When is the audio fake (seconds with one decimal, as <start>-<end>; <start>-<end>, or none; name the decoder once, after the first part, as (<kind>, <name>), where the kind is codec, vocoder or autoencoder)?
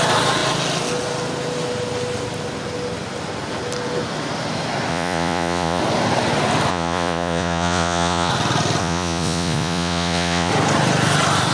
4.9-5.8 (vocoder, Vocos); 6.7-8.3; 8.8-10.5